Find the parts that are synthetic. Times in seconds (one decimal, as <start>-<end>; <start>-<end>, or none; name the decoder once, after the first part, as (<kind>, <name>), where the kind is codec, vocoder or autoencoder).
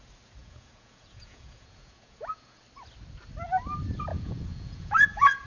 0.4-2.6 (vocoder, Vocos); 4.1-5.5